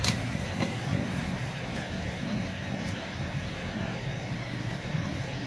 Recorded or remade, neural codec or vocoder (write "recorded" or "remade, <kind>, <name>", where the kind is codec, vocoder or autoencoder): remade, codec, SNAC